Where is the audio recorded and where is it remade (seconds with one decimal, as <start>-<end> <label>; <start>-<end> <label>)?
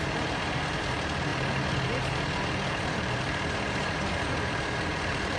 0.0-5.4 remade